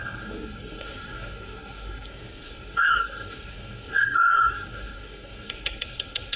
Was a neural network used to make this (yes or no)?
yes